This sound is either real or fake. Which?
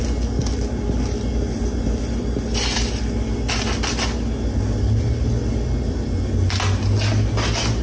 real